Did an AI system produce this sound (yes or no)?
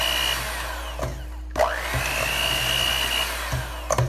no